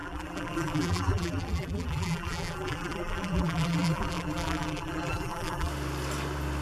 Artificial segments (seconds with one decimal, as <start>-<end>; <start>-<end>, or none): 0.0-5.7